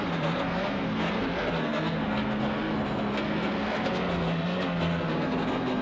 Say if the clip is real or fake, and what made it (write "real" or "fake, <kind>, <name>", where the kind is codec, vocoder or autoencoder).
fake, codec, SNAC